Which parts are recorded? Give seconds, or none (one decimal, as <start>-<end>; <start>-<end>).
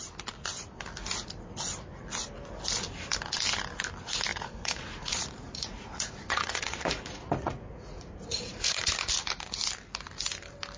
0.0-4.3; 8.9-10.8